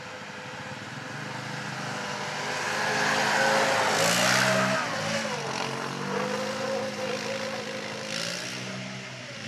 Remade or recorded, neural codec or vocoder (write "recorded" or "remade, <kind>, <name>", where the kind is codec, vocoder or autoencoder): recorded